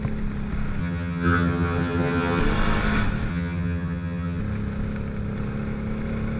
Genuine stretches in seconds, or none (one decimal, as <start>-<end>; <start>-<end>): 0.0-0.8; 2.4-3.3; 4.4-6.4